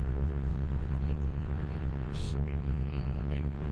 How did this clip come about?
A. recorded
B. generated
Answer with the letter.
B